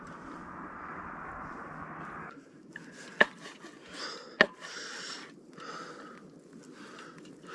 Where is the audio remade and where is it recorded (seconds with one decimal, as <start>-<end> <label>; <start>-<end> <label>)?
0.0-2.2 recorded; 2.2-2.7 remade; 2.7-7.5 recorded